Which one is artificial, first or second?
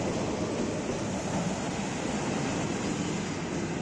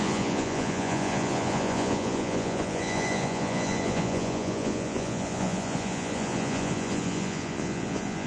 second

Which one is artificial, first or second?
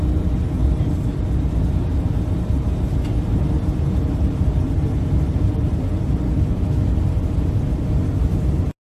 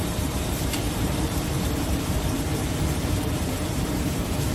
second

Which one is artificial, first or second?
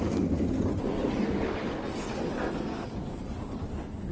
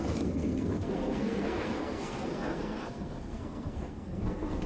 second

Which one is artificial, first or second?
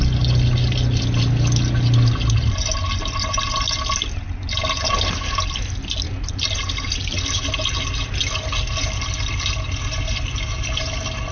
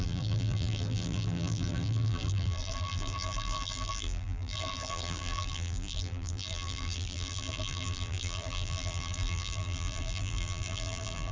second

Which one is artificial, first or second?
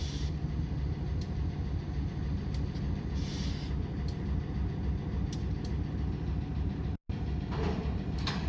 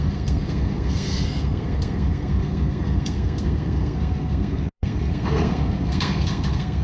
second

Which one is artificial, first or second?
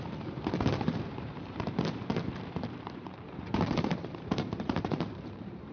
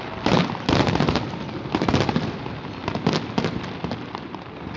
first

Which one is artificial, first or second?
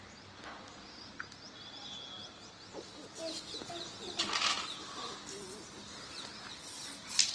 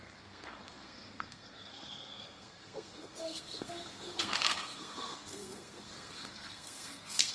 second